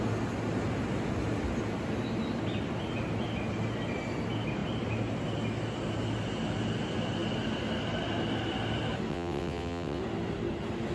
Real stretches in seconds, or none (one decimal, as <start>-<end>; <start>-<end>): 0.0-9.1; 10.0-10.9